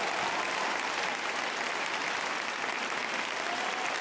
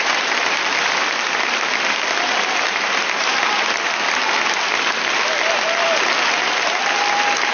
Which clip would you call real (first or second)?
first